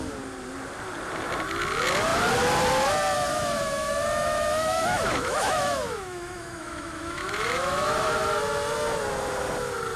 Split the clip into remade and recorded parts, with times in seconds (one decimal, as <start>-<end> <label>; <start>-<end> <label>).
0.0-3.3 recorded; 3.3-7.9 remade; 7.9-10.0 recorded